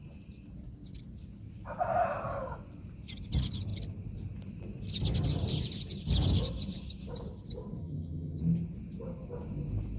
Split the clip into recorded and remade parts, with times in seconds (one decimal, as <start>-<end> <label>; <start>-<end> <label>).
0.0-7.8 recorded; 7.8-8.4 remade; 8.4-10.0 recorded